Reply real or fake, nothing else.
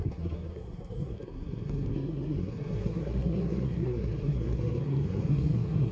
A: fake